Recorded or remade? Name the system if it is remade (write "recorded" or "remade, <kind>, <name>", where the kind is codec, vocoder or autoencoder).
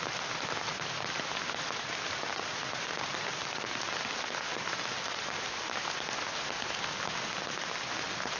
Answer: recorded